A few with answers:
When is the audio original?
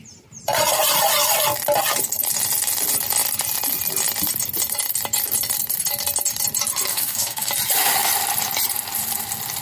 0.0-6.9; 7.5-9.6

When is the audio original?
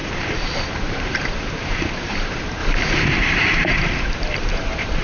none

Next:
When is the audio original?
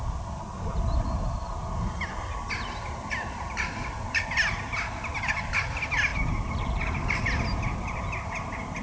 0.0-6.1; 6.6-8.8